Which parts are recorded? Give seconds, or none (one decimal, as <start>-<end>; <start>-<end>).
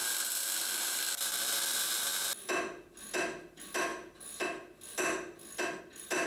0.0-0.8; 2.1-2.8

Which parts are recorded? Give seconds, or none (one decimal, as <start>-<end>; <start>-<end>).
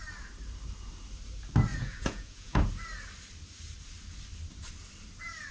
0.0-1.7; 2.6-5.5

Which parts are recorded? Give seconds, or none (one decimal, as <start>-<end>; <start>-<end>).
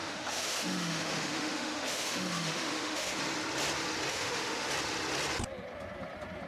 3.2-4.1; 4.7-6.5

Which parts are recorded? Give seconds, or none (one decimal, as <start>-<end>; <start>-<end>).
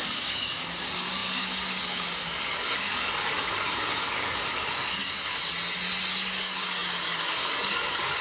5.5-6.1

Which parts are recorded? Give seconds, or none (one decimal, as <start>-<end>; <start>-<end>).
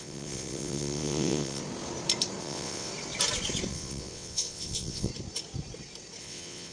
1.6-2.4; 2.9-3.7; 5.1-6.2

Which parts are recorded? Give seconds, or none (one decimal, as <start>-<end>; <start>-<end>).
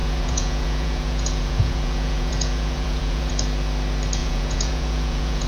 3.3-4.2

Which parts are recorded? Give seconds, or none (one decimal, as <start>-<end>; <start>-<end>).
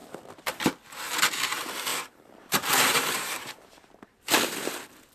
0.5-1.9; 4.0-5.1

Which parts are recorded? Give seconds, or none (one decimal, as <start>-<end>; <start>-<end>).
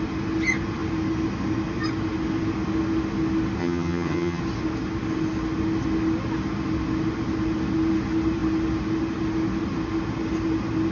0.0-3.6; 4.4-10.9